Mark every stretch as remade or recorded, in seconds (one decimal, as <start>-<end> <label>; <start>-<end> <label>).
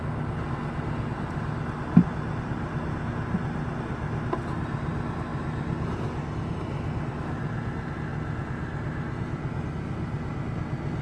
0.0-11.0 recorded